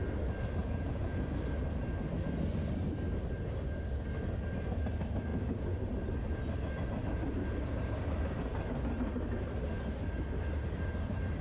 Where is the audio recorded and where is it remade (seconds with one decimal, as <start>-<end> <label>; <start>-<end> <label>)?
0.0-0.6 recorded; 0.6-1.2 remade; 1.2-11.4 recorded